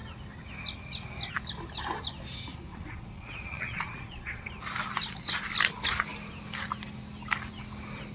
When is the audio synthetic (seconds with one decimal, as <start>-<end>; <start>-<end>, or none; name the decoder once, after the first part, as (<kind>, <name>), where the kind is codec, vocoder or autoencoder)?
2.7-4.5 (vocoder, Vocos)